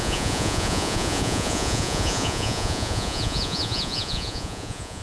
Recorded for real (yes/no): no